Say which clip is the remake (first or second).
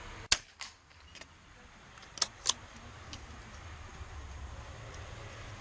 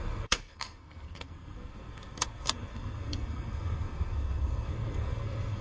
second